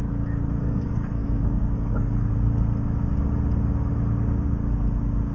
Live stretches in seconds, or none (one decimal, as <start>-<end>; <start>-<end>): 0.0-0.6; 2.3-5.3